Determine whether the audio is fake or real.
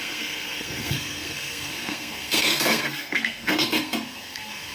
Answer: fake